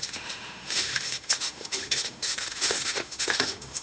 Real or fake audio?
fake